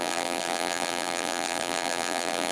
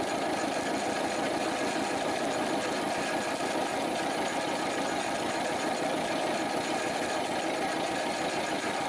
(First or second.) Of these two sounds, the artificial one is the first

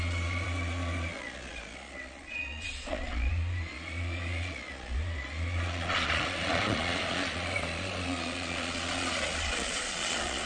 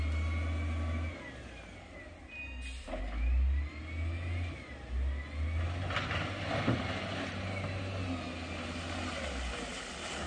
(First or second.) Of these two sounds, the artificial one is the first